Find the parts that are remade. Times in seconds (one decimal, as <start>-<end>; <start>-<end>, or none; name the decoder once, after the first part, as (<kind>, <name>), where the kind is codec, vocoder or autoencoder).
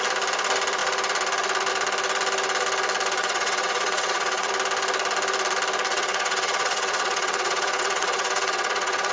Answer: 3.2-4.5 (vocoder, WaveNeXt); 5.9-9.1